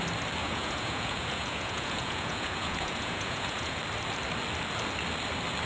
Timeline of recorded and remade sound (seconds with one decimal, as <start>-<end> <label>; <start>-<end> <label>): 0.0-0.4 recorded; 0.4-3.8 remade; 3.8-5.7 recorded